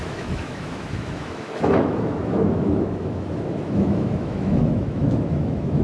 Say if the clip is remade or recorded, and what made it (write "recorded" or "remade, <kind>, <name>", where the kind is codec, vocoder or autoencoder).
remade, autoencoder, DAC-VAE